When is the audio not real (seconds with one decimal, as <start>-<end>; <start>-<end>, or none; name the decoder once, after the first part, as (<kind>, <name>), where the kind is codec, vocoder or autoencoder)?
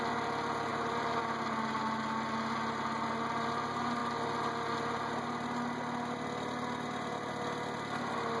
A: 0.7-1.2 (vocoder, BigVGAN v2)